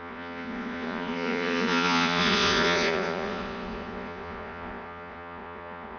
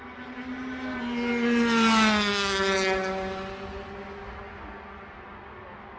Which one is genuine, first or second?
second